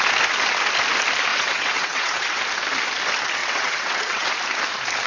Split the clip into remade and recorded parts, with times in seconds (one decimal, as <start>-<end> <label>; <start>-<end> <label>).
0.0-1.3 recorded; 1.3-2.4 remade; 2.4-3.4 recorded; 3.4-4.3 remade; 4.3-5.1 recorded